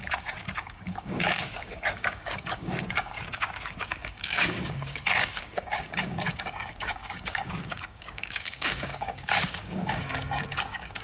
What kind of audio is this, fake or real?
fake